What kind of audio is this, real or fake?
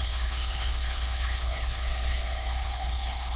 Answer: fake